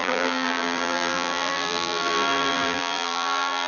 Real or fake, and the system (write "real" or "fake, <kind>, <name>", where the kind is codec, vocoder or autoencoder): fake, vocoder, BigVGAN v2